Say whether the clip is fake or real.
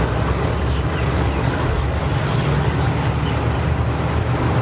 real